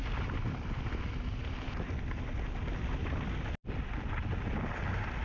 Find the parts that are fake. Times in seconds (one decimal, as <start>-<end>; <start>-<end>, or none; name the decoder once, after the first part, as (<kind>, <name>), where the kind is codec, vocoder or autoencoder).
none